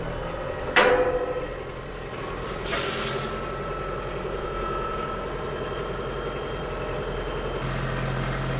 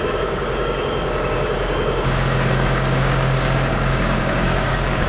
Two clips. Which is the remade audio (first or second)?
second